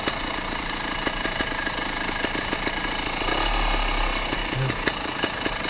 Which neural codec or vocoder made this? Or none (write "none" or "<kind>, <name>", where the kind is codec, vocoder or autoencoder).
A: none